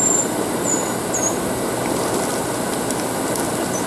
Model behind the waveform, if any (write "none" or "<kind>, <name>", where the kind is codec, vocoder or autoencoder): none